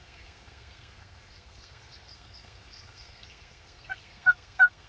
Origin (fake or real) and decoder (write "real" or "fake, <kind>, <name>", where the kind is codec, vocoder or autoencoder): fake, codec, SNAC